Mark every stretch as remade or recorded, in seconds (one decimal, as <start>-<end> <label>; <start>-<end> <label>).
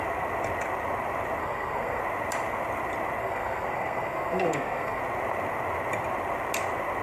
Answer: 0.0-1.4 recorded; 1.4-2.0 remade; 2.0-3.2 recorded; 3.2-5.0 remade; 5.0-7.0 recorded